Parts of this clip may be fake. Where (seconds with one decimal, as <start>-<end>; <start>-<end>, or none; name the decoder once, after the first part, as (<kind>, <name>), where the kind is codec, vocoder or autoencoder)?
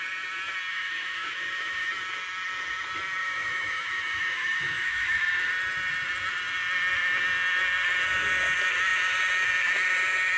0.7-1.9 (autoencoder, DAC-VAE); 3.2-5.2